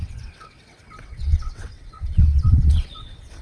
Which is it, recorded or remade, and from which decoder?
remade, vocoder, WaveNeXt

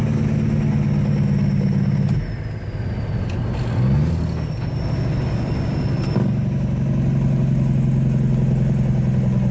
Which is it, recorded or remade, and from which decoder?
recorded